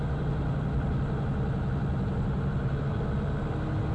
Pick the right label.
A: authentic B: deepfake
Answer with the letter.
A